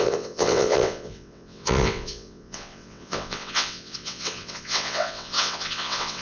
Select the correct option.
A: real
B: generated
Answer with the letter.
B